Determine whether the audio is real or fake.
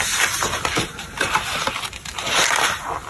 real